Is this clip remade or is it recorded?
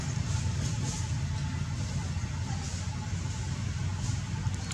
recorded